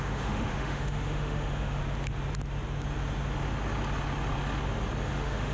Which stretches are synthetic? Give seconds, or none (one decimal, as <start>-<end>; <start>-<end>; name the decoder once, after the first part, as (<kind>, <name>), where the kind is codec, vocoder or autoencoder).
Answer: 0.0-1.8 (autoencoder, DAC-VAE); 5.1-5.5